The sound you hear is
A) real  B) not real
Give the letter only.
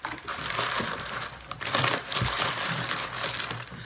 B